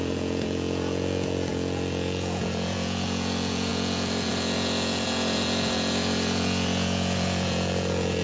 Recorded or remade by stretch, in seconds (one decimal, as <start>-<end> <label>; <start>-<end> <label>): 0.0-8.2 remade